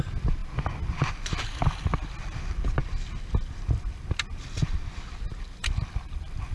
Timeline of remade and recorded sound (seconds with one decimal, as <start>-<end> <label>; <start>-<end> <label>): 0.0-6.5 recorded